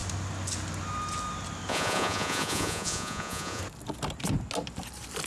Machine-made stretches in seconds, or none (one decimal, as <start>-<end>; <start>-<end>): 1.7-3.6